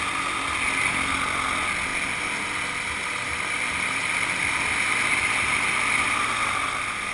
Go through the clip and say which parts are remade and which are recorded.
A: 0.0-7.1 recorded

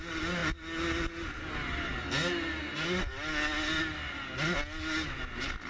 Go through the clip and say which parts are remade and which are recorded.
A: 0.0-5.7 recorded

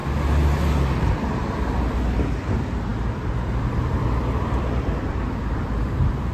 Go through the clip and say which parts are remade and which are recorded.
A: 0.0-1.2 recorded; 1.2-6.3 remade

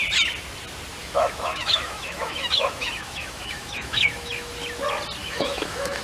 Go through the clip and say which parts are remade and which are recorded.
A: 0.0-1.0 recorded; 1.0-4.6 remade; 4.6-5.2 recorded; 5.2-6.0 remade

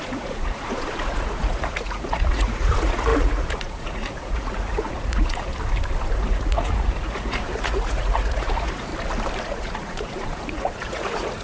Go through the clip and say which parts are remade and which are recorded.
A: 0.0-5.5 remade; 5.5-6.2 recorded; 6.2-8.9 remade; 8.9-9.4 recorded; 9.4-11.4 remade

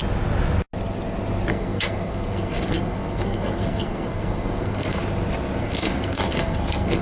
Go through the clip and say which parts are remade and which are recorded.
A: 0.0-1.5 recorded; 1.5-5.0 remade; 5.0-5.6 recorded; 5.6-7.0 remade